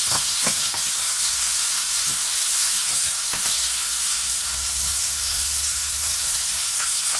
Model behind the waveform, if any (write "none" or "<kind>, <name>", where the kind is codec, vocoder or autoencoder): codec, SNAC